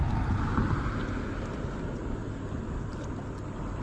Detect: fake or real real